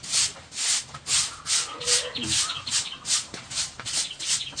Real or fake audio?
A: real